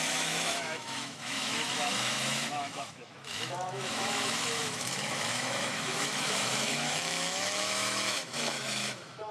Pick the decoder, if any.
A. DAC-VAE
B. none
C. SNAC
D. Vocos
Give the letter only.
A